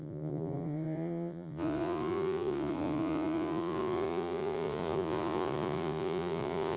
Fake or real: fake